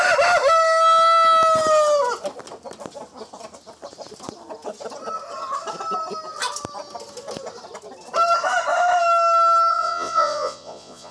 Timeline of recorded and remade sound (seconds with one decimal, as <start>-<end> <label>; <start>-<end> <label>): 0.0-9.7 recorded; 9.7-11.1 remade

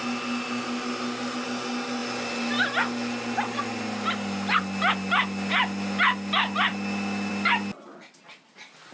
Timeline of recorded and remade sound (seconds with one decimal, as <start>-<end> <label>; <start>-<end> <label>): 0.0-8.9 recorded

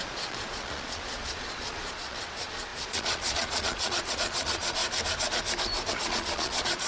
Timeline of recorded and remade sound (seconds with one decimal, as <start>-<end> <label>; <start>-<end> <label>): 0.0-4.8 remade; 4.8-5.9 recorded; 5.9-6.9 remade

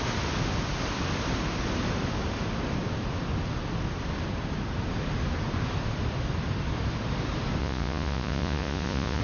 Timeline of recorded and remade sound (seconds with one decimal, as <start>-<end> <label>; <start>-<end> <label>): 0.0-7.6 recorded; 7.6-9.2 remade